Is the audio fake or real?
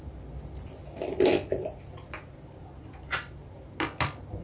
real